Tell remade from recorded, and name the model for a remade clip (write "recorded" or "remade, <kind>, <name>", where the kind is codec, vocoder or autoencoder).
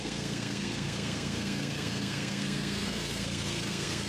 remade, codec, SNAC